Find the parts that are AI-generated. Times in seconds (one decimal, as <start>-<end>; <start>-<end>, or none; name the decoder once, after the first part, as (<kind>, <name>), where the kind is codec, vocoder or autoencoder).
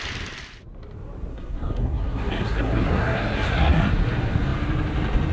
1.3-3.9 (codec, SNAC)